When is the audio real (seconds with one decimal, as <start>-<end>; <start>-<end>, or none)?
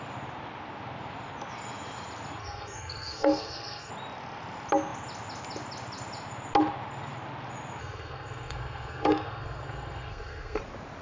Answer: 0.0-2.4; 3.9-7.8; 10.6-11.0